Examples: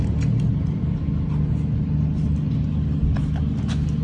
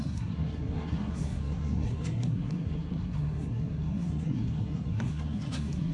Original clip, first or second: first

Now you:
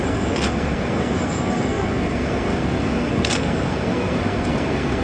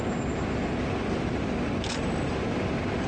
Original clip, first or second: second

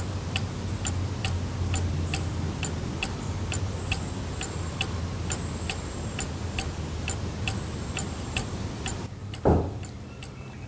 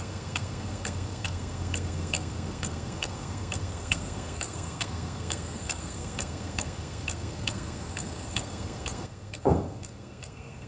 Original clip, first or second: first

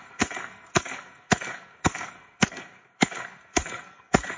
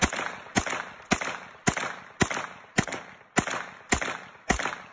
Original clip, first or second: second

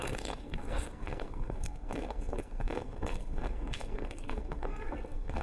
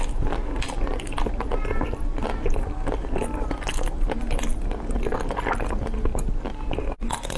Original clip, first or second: second